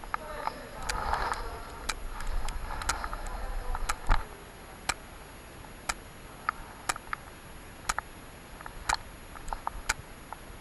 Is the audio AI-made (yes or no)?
no